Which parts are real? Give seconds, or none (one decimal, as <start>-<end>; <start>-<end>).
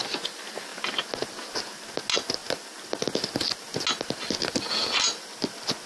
0.0-5.9